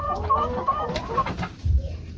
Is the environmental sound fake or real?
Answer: real